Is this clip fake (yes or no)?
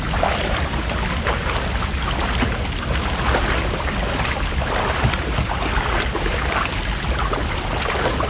no